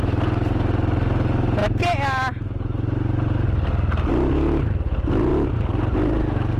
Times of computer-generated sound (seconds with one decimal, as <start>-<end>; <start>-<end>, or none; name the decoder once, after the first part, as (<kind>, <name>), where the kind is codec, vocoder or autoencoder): none